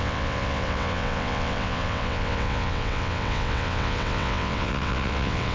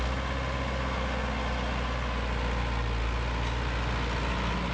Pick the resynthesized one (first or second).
first